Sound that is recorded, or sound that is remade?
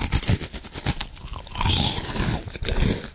recorded